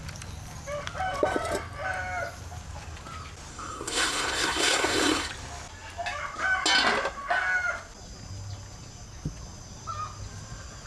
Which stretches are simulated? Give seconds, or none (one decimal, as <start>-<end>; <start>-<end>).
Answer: 3.5-5.3